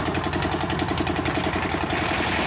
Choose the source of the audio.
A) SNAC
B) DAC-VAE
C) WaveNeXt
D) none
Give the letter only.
D